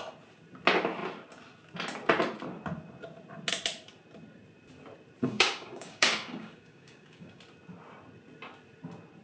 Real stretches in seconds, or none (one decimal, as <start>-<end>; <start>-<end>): 0.0-5.2; 7.4-9.2